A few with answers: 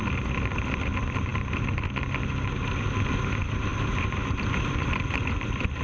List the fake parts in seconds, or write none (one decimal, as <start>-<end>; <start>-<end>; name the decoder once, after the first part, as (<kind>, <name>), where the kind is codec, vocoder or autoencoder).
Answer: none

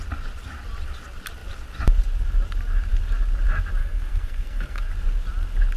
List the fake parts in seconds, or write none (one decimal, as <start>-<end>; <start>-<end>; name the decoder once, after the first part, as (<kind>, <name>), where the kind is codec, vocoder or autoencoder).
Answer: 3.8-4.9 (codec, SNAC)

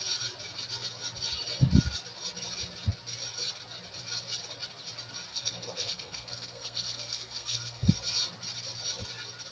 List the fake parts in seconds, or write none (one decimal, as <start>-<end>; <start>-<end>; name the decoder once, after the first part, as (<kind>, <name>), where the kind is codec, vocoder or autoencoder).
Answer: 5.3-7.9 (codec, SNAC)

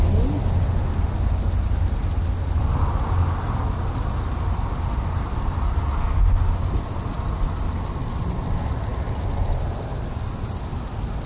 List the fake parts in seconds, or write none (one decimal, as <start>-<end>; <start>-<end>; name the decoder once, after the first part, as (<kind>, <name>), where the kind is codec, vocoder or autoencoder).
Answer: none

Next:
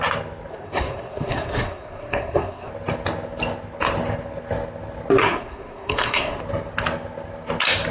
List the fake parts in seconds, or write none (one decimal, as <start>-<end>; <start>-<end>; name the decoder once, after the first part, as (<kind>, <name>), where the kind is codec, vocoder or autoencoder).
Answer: 0.5-2.7 (codec, SNAC); 5.2-6.4

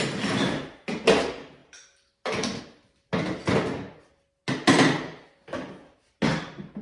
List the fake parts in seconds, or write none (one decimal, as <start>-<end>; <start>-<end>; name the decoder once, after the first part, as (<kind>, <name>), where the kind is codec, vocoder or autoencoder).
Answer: none